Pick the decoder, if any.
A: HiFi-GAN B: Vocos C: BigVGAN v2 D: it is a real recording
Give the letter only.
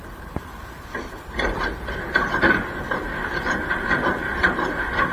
C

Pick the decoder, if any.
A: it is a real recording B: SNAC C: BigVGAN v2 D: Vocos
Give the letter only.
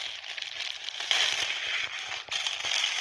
A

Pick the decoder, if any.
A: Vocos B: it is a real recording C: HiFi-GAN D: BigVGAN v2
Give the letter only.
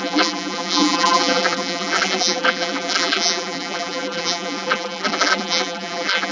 D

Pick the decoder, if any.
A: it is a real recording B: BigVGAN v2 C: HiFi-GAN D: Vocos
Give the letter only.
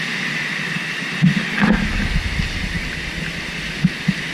A